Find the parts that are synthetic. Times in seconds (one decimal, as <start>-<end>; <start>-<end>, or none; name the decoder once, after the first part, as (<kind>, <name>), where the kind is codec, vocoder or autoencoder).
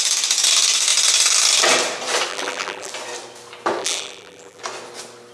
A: 2.3-2.9 (vocoder, BigVGAN v2); 3.8-4.6